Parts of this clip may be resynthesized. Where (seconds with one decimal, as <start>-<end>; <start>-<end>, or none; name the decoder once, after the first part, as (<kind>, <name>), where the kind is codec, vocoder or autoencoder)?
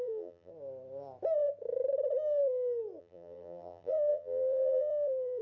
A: 0.0-0.5 (vocoder, BigVGAN v2); 3.0-5.4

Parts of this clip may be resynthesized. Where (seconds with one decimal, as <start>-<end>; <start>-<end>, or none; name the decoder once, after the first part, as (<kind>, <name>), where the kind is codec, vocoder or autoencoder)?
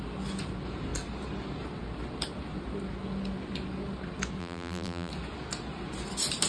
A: 4.4-5.1 (vocoder, BigVGAN v2)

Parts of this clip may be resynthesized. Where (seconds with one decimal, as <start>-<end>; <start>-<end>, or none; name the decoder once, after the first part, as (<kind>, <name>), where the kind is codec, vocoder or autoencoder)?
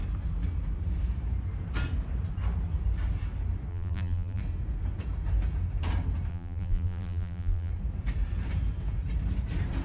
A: 3.7-4.4 (vocoder, BigVGAN v2); 6.3-7.7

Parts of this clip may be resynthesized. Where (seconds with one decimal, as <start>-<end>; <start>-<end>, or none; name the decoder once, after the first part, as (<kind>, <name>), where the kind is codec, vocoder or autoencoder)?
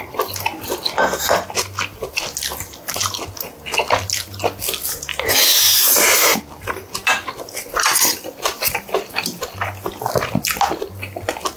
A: 6.3-6.9 (vocoder, BigVGAN v2)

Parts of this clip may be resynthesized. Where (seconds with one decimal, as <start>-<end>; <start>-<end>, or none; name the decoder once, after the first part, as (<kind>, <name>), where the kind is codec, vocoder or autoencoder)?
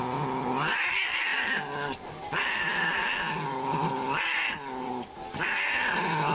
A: none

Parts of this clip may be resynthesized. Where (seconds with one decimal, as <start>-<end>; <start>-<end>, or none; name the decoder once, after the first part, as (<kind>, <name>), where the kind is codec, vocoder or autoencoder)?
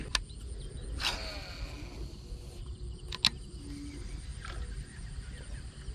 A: none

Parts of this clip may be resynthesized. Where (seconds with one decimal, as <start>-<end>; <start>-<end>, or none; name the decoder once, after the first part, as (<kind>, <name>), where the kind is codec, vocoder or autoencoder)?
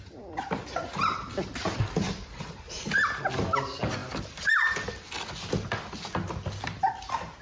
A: none